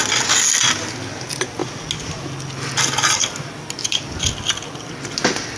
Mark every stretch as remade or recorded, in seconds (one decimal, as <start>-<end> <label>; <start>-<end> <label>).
0.0-5.6 recorded